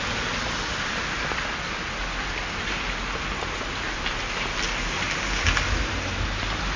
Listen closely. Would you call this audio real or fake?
real